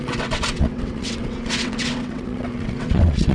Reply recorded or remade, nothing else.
remade